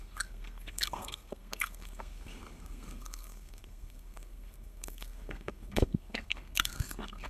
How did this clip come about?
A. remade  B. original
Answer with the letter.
A